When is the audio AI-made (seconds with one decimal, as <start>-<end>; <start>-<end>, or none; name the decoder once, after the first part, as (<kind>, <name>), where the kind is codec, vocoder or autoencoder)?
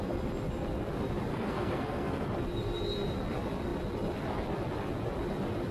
1.3-2.2 (codec, SNAC)